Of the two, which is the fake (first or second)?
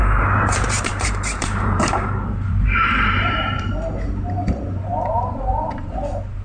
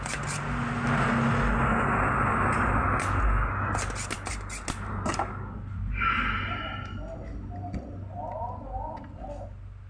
first